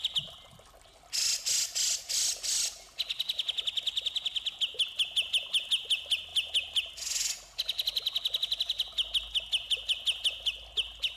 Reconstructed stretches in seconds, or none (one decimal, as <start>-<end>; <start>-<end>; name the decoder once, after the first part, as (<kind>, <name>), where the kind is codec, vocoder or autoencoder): none